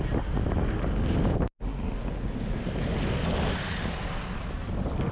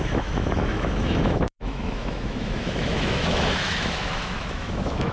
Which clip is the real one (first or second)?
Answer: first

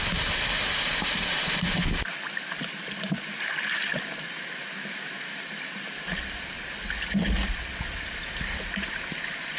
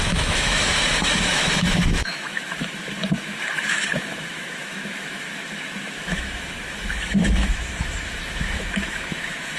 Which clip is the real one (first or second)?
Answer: first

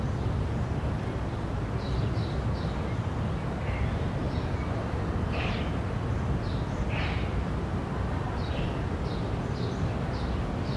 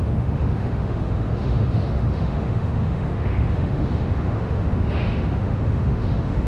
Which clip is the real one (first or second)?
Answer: first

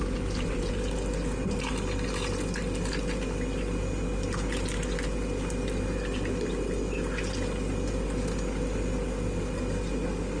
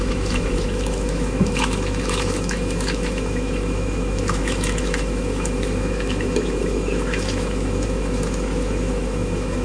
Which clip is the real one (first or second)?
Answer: first